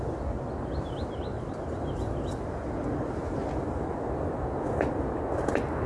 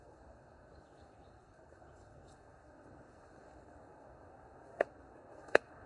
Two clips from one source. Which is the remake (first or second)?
second